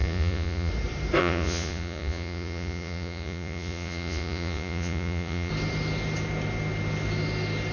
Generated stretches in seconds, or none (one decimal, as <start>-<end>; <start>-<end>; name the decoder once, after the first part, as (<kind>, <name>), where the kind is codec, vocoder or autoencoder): 0.0-0.7 (vocoder, Vocos); 1.2-5.5